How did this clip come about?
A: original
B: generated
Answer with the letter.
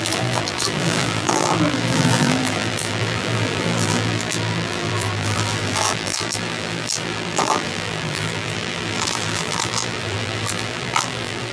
B